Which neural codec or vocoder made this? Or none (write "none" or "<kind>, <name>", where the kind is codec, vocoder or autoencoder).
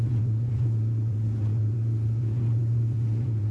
vocoder, Vocos